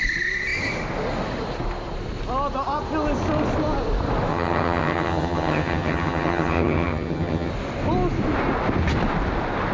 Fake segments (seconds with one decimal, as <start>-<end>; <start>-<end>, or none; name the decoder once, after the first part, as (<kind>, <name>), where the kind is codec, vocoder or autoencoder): 4.3-7.5 (vocoder, HiFi-GAN)